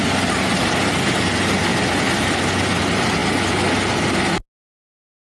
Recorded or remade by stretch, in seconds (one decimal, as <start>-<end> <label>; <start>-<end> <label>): 0.0-5.3 recorded